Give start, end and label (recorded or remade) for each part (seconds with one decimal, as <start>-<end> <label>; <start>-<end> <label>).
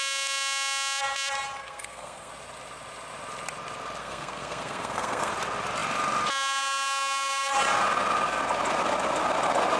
0.0-1.6 recorded; 1.6-2.3 remade; 2.3-4.0 recorded; 4.0-5.3 remade; 5.3-9.8 recorded